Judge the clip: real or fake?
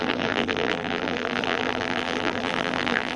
fake